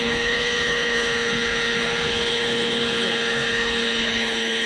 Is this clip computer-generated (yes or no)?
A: yes